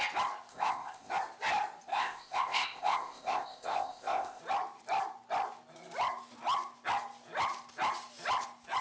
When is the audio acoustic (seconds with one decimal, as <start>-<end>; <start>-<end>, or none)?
0.0-0.5; 1.1-1.9; 4.4-8.8